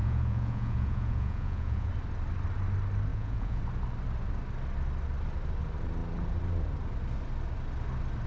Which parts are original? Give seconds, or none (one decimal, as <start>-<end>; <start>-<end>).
1.9-3.1; 3.6-8.3